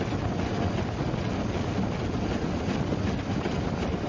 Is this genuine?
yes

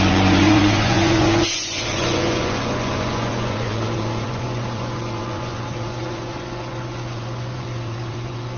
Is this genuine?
no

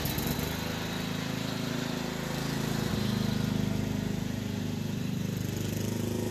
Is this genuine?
yes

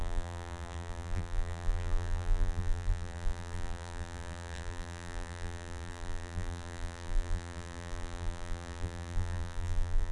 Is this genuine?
no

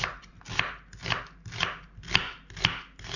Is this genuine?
yes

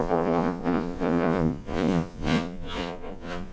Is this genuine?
no